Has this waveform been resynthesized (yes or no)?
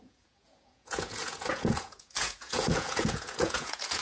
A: yes